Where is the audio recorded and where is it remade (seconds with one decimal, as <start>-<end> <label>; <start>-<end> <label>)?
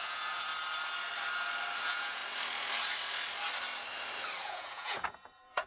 0.0-0.5 remade; 0.5-1.8 recorded; 1.8-2.2 remade; 2.2-4.4 recorded; 4.4-5.7 remade